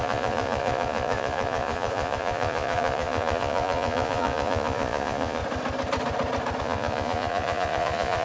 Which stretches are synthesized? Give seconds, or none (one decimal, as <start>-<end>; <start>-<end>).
0.0-5.4; 6.6-8.2